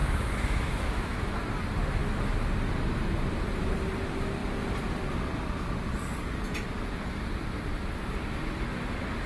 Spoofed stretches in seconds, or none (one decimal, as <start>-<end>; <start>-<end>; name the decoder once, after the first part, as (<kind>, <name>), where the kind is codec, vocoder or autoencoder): 0.0-1.3 (autoencoder, DAC-VAE)